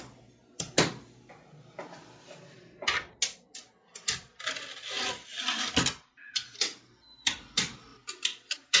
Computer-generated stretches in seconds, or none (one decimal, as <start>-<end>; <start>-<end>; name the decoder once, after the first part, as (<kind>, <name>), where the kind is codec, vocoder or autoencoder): none